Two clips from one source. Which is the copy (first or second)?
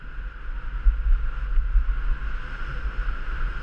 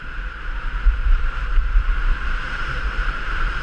second